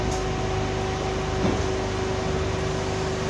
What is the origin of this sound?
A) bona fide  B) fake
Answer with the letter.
A